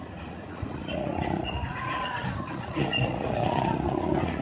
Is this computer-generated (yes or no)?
yes